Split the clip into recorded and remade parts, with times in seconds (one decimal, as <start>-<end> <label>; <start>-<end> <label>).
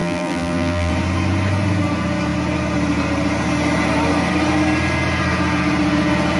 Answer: 0.0-0.9 remade; 0.9-6.4 recorded